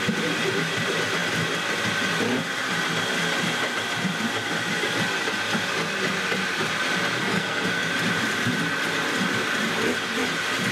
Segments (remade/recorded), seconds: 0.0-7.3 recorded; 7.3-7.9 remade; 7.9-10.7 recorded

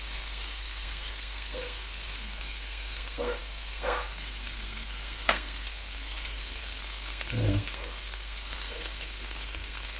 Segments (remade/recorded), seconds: 0.0-10.0 remade

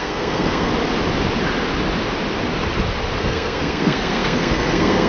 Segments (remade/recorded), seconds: 0.0-0.7 remade; 0.7-3.2 recorded; 3.2-5.1 remade

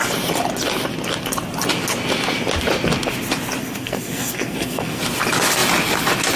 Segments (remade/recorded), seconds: 0.0-3.6 recorded; 3.6-5.0 remade; 5.0-6.4 recorded

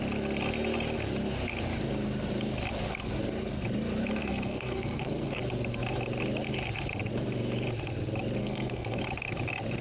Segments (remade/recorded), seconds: 0.0-4.2 recorded; 4.2-5.4 remade; 5.4-8.4 recorded; 8.4-9.0 remade; 9.0-9.8 recorded

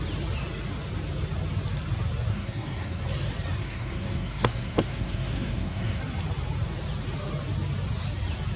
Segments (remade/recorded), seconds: 0.0-2.3 recorded; 2.3-3.0 remade; 3.0-3.6 recorded; 3.6-6.0 remade; 6.0-8.6 recorded